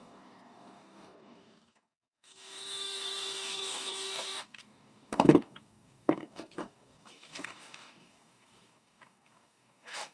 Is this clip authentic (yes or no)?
no